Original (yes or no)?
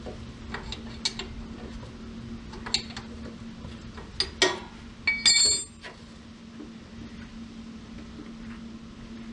yes